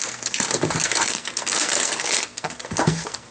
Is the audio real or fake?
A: fake